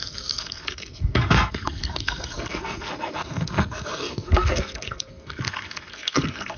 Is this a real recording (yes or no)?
no